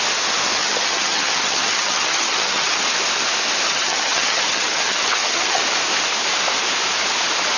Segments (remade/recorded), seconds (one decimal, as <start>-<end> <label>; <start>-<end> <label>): 0.0-0.6 recorded; 0.6-2.8 remade; 2.8-3.7 recorded; 3.7-5.6 remade; 5.6-7.6 recorded